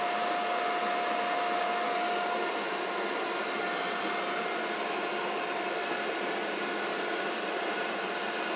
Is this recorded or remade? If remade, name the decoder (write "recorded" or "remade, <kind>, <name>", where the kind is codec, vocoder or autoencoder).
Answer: recorded